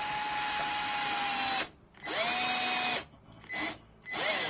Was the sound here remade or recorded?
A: recorded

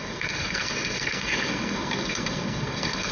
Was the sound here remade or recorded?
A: remade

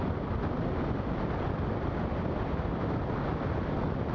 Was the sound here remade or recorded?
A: recorded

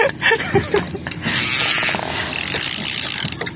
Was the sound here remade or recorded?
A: recorded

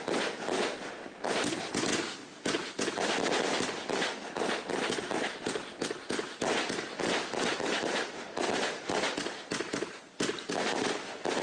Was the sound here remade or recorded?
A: recorded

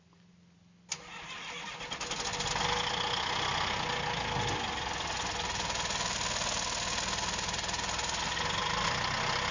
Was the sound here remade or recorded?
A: recorded